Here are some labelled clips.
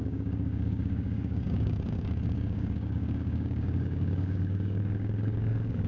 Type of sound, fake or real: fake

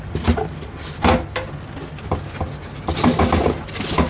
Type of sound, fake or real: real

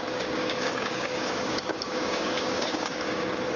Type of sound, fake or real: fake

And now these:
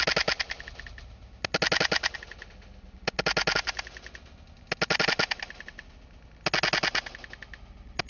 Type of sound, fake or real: real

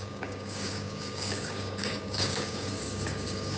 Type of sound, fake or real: fake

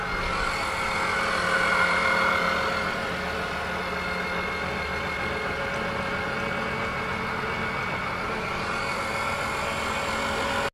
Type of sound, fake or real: real